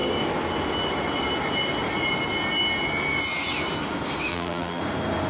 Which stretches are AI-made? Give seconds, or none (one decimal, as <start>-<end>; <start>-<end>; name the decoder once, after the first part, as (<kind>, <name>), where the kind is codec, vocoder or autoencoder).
4.3-4.8 (vocoder, BigVGAN v2)